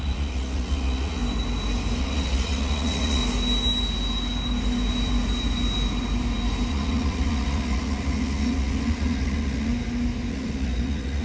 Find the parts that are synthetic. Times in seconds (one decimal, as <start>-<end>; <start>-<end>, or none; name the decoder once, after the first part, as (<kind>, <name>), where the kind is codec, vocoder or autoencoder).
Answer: 0.0-1.2 (vocoder, Vocos); 2.0-3.2; 6.7-9.7; 10.3-11.2